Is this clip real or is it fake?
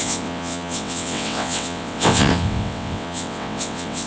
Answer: fake